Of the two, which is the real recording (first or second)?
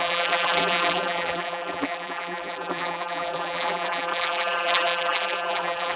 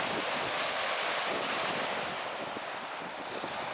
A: second